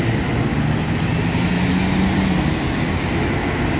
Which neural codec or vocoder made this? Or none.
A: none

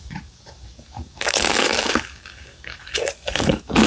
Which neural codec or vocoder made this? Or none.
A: codec, DAC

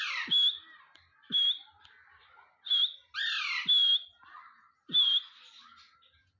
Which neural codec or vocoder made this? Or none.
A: none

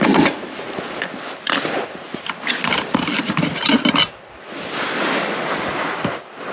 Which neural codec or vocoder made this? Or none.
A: none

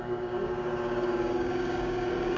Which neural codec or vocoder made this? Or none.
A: codec, DAC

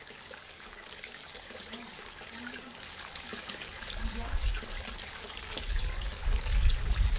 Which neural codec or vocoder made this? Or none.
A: codec, DAC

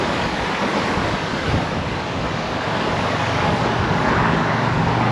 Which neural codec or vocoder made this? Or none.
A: codec, DAC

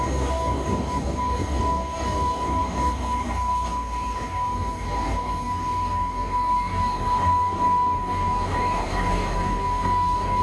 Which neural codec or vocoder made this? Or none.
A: codec, DAC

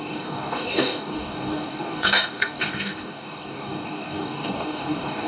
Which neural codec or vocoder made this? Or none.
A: codec, DAC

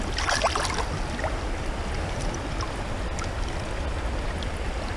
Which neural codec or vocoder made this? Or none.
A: none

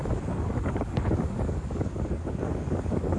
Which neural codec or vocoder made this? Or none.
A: codec, DAC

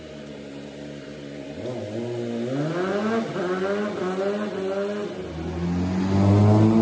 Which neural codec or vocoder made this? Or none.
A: none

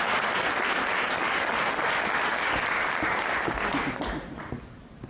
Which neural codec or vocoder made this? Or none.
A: none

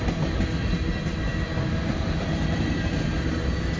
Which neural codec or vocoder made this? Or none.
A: none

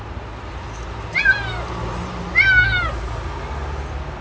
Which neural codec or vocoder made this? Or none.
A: none